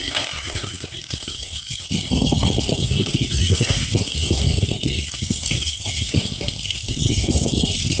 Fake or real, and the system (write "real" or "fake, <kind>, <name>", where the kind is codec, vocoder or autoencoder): fake, codec, SNAC